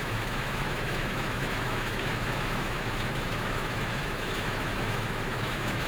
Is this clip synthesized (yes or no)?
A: yes